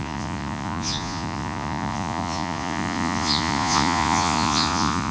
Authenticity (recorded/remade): remade